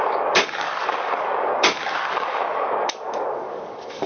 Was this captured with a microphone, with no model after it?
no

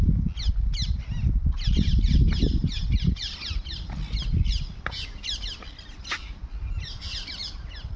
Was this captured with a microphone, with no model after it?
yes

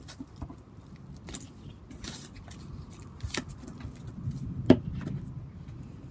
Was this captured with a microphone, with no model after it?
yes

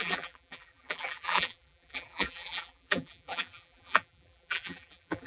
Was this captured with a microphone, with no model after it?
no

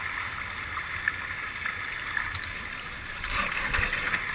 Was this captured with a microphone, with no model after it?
yes